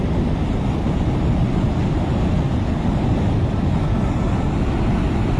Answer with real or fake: real